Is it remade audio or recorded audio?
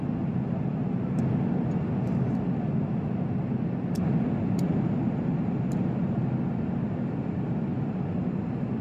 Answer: recorded